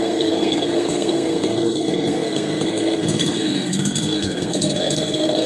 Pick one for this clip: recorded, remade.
remade